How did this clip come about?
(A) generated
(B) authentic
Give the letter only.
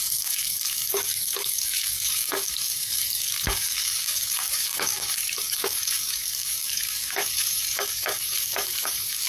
A